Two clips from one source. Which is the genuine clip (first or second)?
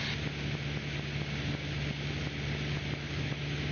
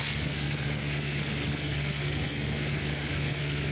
first